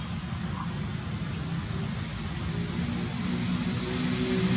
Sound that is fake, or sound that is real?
real